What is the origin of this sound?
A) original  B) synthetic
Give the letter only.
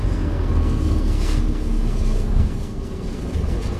B